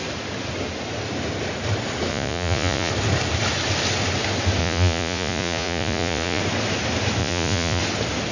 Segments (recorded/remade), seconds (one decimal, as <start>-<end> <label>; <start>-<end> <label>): 0.0-2.1 recorded; 2.1-2.9 remade; 2.9-4.6 recorded; 4.6-6.4 remade; 6.4-7.2 recorded; 7.2-7.8 remade; 7.8-8.3 recorded